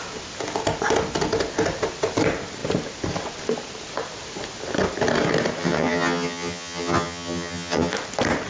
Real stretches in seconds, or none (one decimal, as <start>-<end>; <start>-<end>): 0.0-5.6; 7.9-8.5